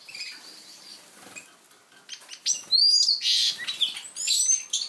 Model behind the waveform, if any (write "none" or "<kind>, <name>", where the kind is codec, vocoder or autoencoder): none